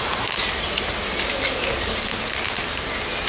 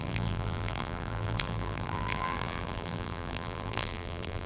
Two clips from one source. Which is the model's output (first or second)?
second